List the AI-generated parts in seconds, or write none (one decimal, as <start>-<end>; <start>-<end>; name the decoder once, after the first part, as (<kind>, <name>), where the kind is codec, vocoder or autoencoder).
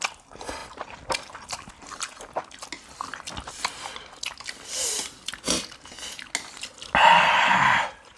none